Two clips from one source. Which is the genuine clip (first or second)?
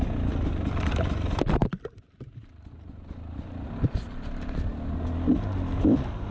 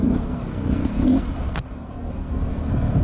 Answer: first